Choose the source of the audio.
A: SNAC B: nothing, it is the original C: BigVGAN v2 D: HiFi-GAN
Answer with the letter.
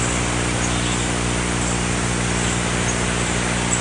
B